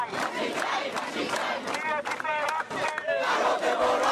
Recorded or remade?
recorded